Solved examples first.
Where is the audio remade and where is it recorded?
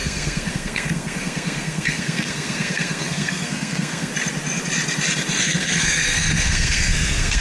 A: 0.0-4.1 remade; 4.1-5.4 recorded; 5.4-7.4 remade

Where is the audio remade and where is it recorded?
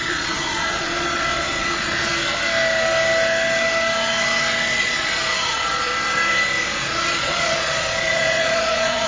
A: 0.0-2.1 remade; 2.1-4.8 recorded; 4.8-5.9 remade; 5.9-6.6 recorded; 6.6-9.1 remade